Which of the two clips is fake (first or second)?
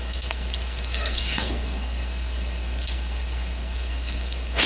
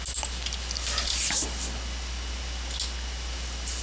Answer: first